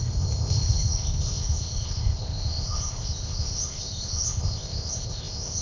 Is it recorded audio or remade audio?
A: remade